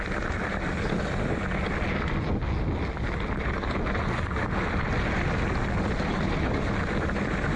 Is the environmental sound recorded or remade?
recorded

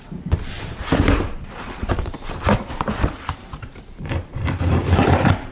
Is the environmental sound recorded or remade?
remade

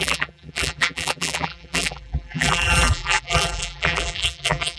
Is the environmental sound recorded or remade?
remade